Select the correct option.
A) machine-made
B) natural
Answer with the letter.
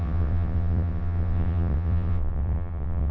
A